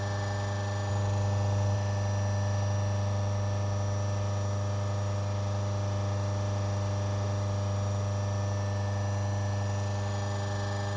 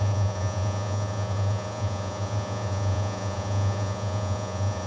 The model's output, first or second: second